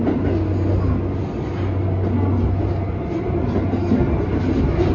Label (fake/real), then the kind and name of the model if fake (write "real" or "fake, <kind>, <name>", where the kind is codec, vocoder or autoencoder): real